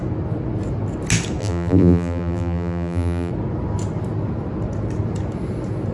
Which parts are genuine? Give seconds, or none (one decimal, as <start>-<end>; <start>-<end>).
0.0-1.4; 3.3-5.9